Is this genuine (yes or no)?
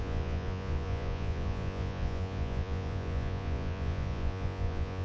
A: no